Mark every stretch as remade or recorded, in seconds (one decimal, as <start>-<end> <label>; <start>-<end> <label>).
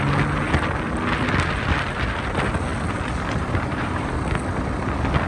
0.0-3.4 recorded; 3.4-4.1 remade; 4.1-5.3 recorded